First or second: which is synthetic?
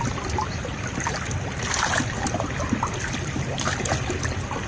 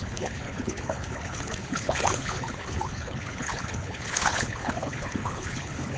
second